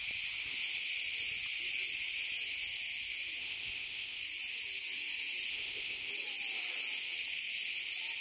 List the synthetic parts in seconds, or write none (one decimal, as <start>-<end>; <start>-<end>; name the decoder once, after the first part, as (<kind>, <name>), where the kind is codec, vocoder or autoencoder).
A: 3.4-4.2 (codec, ZipCodec); 5.5-6.1